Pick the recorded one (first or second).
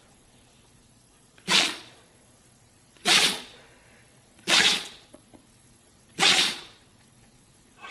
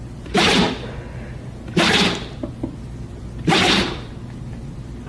second